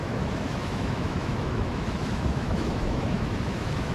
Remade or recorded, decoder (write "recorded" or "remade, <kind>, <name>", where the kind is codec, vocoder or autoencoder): remade, autoencoder, DAC-VAE